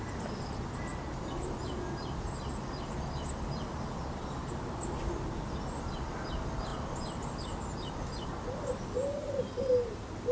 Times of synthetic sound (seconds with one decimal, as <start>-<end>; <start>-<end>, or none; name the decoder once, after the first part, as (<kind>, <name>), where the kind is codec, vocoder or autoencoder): none